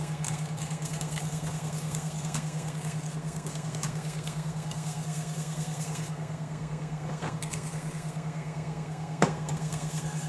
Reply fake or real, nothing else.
fake